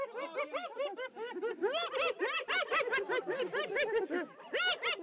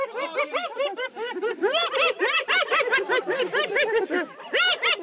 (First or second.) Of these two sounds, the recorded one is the first